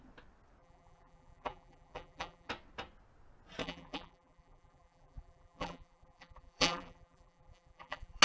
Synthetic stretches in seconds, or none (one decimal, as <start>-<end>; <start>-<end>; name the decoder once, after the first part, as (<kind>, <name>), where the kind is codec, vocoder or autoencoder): 0.6-2.5 (vocoder, BigVGAN v2); 3.6-8.2